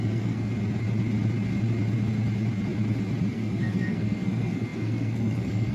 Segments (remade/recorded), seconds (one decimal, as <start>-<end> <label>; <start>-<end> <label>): 0.0-0.5 remade; 0.5-3.3 recorded; 3.3-5.7 remade